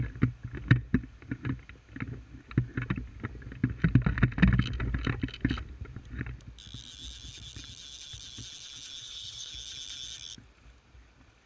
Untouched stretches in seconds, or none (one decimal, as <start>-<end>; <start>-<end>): 0.0-9.0; 9.5-11.5